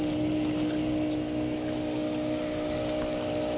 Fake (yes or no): no